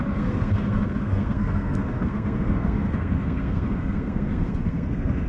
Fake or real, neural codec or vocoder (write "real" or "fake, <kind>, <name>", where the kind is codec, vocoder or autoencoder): fake, codec, SNAC